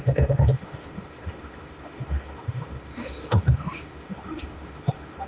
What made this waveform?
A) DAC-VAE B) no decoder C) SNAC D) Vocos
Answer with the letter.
A